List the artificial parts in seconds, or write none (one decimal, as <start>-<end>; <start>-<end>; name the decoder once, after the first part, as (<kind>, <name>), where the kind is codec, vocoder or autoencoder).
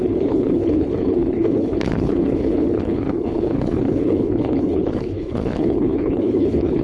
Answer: 0.0-6.8 (codec, HILCodec)